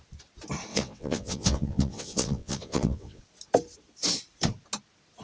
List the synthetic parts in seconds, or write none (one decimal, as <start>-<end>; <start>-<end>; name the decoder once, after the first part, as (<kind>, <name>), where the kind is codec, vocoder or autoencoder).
0.7-3.2 (vocoder, WaveNeXt)